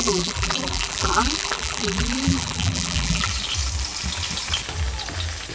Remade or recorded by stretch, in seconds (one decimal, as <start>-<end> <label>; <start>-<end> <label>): 0.0-3.3 remade; 3.3-5.5 recorded